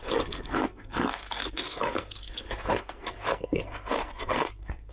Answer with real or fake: fake